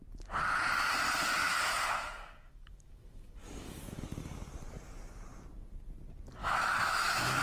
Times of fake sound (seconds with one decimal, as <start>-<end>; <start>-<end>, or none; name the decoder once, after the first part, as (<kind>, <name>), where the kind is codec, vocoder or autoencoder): 1.4-3.8 (autoencoder, DAC-VAE); 6.4-7.4

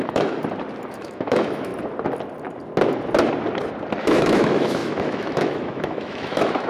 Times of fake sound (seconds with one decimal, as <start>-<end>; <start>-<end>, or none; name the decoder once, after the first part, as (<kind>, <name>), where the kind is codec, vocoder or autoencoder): 0.0-0.4 (autoencoder, DAC-VAE); 0.9-1.7; 4.0-6.7

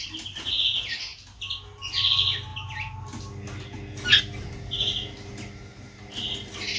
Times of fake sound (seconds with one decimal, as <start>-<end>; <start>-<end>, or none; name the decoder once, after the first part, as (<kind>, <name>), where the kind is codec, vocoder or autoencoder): none

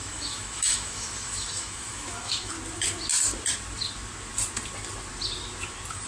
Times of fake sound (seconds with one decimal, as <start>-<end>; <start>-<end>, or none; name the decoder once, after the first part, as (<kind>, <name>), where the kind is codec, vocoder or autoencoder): 0.0-2.5 (autoencoder, DAC-VAE)

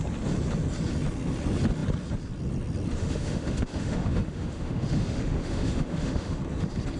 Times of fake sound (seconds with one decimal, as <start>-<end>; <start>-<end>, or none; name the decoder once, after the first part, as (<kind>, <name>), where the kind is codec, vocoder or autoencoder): 3.0-6.4 (autoencoder, DAC-VAE)